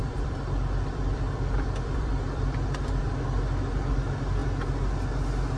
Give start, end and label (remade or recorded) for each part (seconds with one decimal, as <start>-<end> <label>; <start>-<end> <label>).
0.0-3.0 remade; 3.0-5.6 recorded